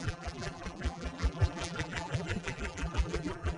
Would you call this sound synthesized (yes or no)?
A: yes